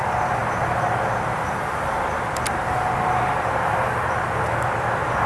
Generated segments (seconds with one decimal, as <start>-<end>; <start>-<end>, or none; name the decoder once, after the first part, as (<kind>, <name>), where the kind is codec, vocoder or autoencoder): none